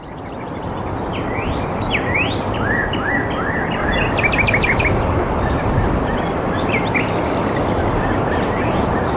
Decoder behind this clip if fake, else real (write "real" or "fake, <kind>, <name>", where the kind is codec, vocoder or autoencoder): fake, vocoder, BigVGAN v2